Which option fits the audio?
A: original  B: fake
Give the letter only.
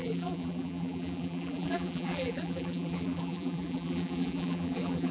B